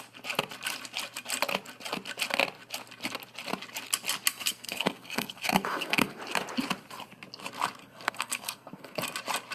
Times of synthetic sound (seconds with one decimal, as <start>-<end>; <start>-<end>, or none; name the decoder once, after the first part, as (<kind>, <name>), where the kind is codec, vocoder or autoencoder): 4.3-6.2 (codec, SNAC); 7.8-9.0